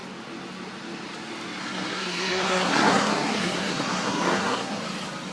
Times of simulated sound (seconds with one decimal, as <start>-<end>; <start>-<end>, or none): 1.6-4.8